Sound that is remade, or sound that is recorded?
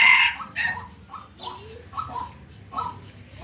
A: recorded